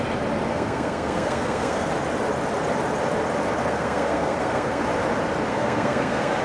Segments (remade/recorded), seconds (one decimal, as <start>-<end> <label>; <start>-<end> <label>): 0.0-0.5 recorded; 0.5-1.9 remade; 1.9-3.6 recorded; 3.6-4.8 remade; 4.8-5.5 recorded; 5.5-6.4 remade